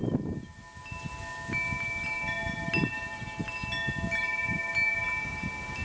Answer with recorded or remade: recorded